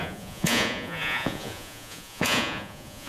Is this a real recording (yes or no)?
no